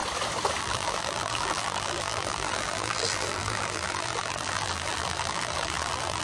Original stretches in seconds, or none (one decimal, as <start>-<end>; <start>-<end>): 0.0-0.6